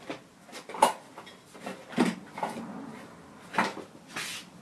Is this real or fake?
real